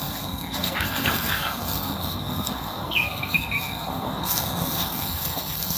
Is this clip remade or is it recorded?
remade